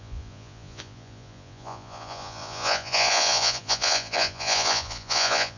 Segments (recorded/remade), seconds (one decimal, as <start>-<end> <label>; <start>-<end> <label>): 0.0-5.6 remade